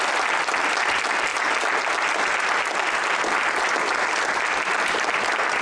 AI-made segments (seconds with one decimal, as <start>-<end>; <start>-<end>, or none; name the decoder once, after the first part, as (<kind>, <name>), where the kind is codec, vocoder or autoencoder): none